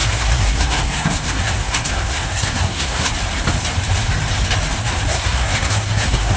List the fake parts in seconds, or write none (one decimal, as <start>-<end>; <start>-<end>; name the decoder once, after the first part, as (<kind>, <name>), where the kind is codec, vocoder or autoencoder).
0.0-3.1 (codec, SNAC); 5.1-6.4